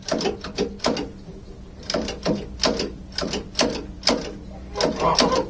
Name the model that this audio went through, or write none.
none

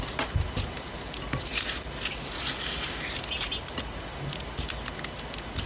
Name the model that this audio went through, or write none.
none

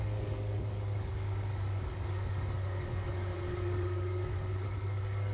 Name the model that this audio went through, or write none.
codec, DAC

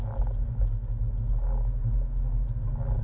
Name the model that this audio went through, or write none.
none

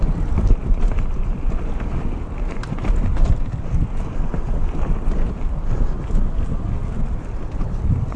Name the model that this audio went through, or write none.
none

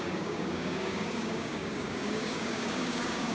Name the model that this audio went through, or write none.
codec, DAC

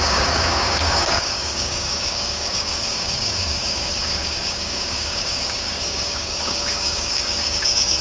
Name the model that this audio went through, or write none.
codec, DAC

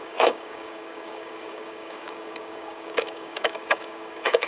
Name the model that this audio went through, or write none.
codec, DAC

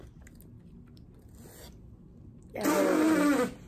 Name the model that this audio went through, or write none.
none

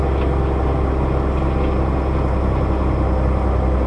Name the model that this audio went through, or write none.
none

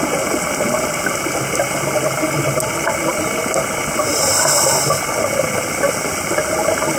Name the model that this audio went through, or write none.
none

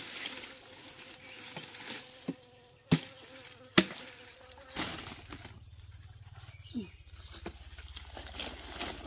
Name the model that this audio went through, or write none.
none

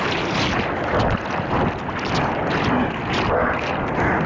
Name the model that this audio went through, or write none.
none